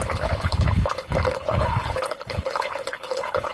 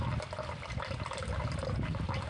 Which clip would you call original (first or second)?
second